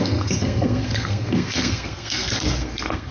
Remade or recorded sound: remade